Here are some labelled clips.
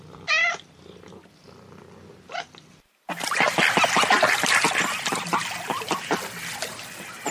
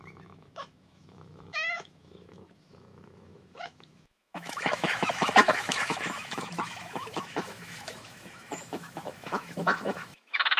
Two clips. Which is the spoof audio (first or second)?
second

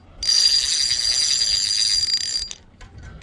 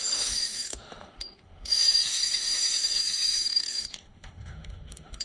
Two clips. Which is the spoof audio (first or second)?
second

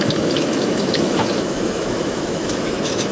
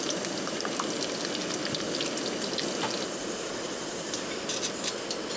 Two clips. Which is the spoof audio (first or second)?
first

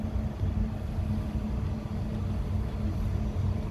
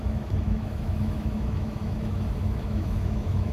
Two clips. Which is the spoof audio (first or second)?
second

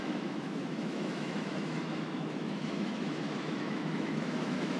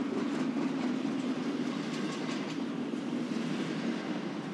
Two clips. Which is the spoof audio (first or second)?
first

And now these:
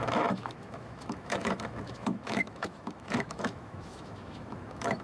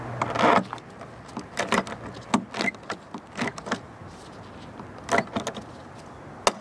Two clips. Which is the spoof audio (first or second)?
first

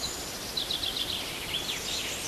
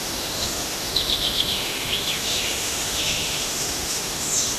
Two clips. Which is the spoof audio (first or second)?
second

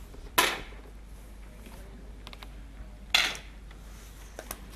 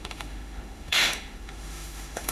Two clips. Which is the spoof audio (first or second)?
second